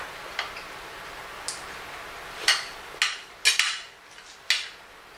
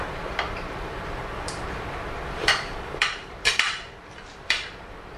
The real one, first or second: first